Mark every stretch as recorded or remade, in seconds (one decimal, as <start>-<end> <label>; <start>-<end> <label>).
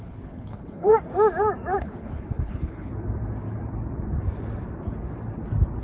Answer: 0.0-0.9 remade; 0.9-1.8 recorded; 1.8-2.9 remade; 2.9-5.8 recorded